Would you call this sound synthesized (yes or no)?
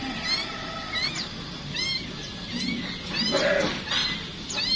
no